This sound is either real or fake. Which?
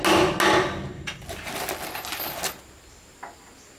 real